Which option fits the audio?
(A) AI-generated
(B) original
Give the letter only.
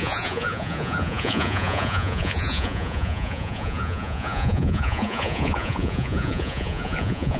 A